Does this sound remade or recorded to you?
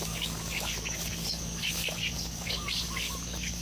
remade